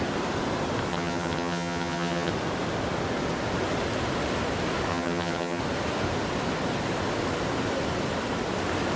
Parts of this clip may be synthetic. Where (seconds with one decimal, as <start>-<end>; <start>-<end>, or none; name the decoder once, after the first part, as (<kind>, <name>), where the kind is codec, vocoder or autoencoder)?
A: 0.9-2.3 (vocoder, HiFi-GAN); 4.9-5.6